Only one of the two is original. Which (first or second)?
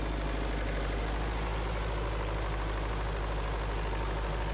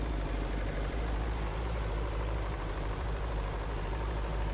first